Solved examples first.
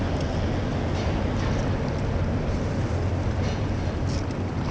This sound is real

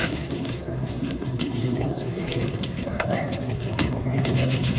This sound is fake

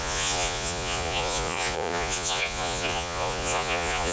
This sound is fake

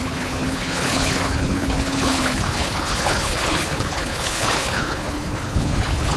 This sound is fake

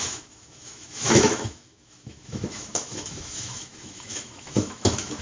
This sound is fake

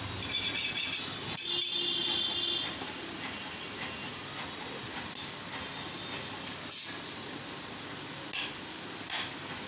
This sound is real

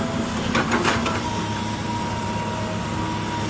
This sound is real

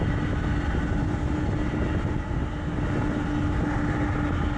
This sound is real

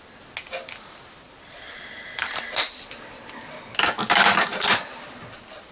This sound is real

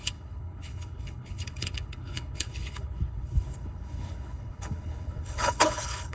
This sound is fake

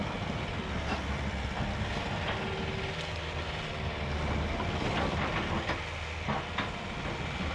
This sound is real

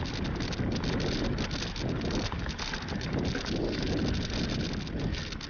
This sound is real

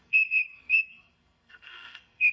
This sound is fake